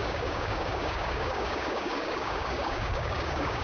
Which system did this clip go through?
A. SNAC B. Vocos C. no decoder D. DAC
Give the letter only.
D